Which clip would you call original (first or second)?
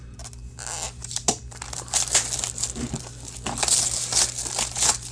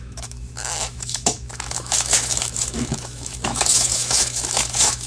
first